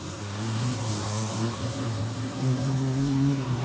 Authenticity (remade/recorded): remade